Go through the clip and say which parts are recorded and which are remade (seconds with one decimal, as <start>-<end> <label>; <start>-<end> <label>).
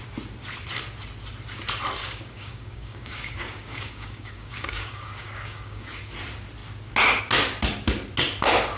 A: 0.0-2.0 recorded; 2.0-6.0 remade; 6.0-8.8 recorded